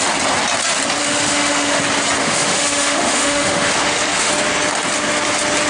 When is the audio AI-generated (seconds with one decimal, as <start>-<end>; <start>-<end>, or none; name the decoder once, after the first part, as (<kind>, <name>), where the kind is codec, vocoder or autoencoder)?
1.0-1.8 (autoencoder, DAC-VAE); 2.2-4.3